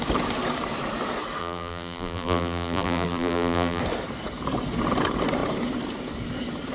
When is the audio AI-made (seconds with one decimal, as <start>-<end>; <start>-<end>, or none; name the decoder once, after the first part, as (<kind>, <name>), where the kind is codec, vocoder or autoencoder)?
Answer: 1.4-3.8 (vocoder, BigVGAN v2)

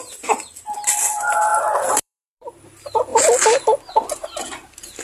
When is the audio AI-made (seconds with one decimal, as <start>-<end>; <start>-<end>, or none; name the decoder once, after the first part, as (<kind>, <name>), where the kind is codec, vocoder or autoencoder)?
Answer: 1.5-2.6 (vocoder, BigVGAN v2)

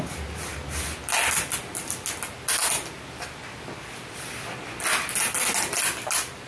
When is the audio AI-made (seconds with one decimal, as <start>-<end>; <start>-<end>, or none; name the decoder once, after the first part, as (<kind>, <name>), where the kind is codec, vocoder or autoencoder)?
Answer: none

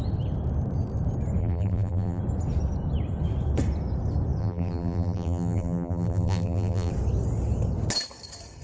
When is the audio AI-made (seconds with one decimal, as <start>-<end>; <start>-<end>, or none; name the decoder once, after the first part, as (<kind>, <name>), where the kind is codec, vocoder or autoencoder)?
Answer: 1.4-2.2 (vocoder, BigVGAN v2); 4.4-6.9

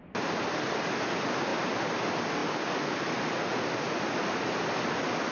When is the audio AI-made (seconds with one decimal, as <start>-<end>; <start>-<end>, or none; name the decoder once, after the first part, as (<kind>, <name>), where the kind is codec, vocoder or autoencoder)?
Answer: none

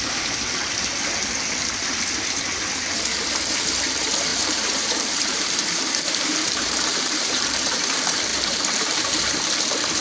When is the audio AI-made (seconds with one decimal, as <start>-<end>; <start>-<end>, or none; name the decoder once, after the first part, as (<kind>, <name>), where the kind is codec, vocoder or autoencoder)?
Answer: 4.3-7.9 (vocoder, BigVGAN v2); 8.3-9.3

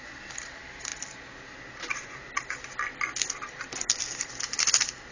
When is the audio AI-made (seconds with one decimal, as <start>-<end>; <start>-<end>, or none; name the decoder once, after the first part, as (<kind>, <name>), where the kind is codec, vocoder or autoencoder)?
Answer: 0.0-0.9 (vocoder, BigVGAN v2); 4.0-5.1